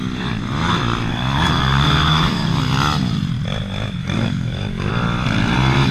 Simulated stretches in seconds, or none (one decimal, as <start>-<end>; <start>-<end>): 1.1-2.6; 4.0-4.9

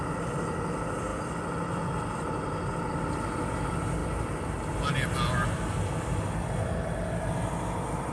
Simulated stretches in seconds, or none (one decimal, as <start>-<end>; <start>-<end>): none

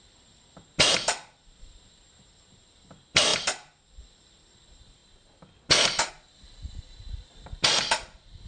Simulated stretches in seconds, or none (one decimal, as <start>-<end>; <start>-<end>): 0.0-5.0; 6.1-8.5

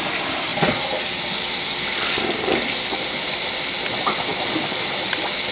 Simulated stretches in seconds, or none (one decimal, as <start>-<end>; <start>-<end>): none

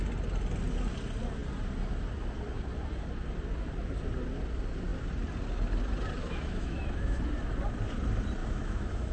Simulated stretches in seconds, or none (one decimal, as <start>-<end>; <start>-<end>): 6.2-7.2; 8.4-9.1

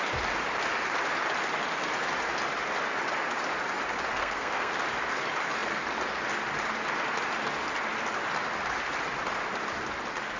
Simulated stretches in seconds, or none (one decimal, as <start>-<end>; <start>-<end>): 4.2-4.7

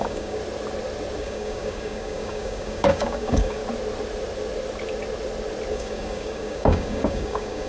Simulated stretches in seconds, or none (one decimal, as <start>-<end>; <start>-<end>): 0.0-0.4; 1.2-3.6; 5.7-7.7